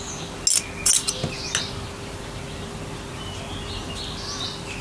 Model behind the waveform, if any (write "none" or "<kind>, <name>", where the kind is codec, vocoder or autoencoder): none